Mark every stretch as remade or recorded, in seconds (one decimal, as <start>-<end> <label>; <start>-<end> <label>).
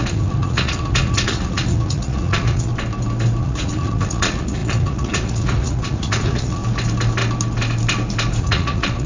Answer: 0.0-2.7 remade; 2.7-3.4 recorded; 3.4-6.6 remade; 6.6-8.4 recorded; 8.4-9.1 remade